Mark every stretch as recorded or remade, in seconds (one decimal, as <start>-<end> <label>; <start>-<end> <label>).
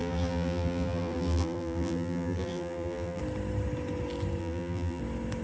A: 0.0-3.2 remade; 3.2-4.4 recorded; 4.4-5.0 remade; 5.0-5.4 recorded